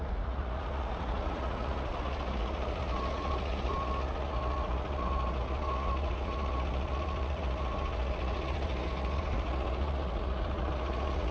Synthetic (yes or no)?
yes